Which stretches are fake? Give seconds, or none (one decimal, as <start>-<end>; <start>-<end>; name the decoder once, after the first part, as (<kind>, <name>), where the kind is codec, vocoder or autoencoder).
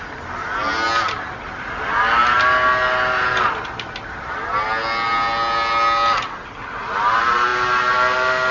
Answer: none